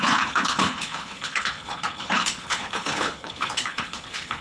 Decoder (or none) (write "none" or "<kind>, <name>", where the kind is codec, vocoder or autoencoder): codec, HILCodec